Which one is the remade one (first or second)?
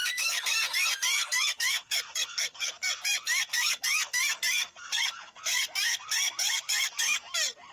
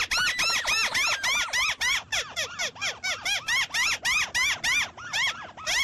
first